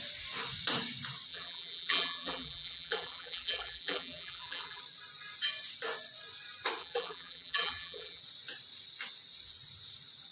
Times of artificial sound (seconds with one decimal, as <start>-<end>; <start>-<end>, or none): 1.3-4.8; 6.8-8.2